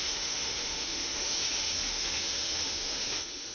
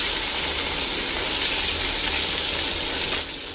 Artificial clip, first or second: first